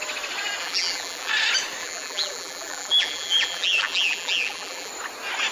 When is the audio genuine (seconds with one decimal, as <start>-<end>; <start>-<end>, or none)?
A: 0.0-0.6; 1.3-1.8; 4.9-5.5